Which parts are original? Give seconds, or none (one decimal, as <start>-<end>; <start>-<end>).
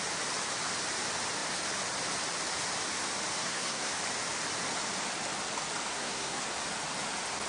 0.0-3.4; 3.9-5.9; 6.4-7.5